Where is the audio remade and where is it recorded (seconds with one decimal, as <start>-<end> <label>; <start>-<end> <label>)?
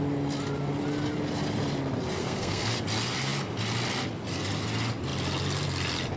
0.0-2.2 recorded; 2.2-2.8 remade; 2.8-6.2 recorded